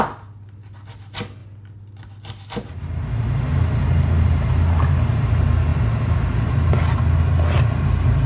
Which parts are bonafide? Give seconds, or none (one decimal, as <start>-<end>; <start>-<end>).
0.0-8.3